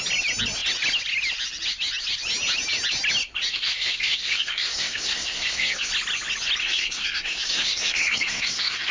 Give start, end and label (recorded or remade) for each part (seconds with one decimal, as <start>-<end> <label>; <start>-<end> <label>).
0.0-3.5 recorded; 3.5-5.9 remade; 5.9-6.6 recorded; 6.6-8.9 remade